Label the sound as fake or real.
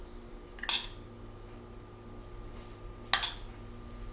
real